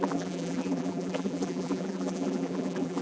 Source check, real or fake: fake